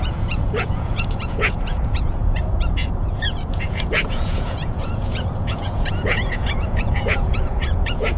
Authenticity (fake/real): fake